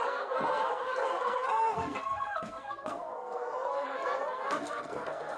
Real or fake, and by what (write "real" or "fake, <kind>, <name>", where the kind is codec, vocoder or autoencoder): fake, codec, SNAC